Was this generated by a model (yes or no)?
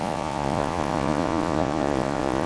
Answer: yes